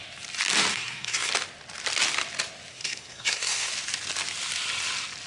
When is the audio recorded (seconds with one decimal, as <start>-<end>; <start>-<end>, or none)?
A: 0.0-0.7; 1.3-2.7; 3.7-5.3